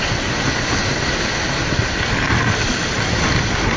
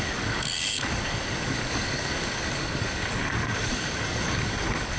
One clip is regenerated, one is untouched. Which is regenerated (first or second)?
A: second